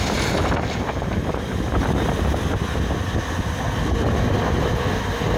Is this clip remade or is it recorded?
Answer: recorded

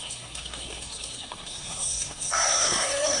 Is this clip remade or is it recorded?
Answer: remade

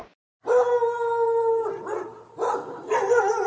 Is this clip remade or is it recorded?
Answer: recorded